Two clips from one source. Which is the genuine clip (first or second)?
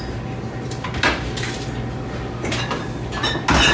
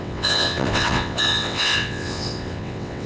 first